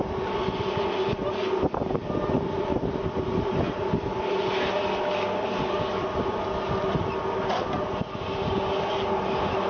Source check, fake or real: real